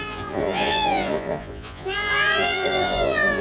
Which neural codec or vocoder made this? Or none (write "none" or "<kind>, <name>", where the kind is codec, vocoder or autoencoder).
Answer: vocoder, Vocos